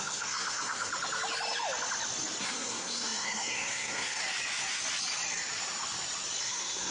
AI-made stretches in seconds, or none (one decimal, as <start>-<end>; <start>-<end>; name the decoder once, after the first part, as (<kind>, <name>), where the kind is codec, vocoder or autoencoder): 0.0-0.9 (codec, SNAC); 2.4-4.2; 6.4-6.9